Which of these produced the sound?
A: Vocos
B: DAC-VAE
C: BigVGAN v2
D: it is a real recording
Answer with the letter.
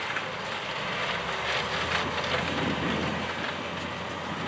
D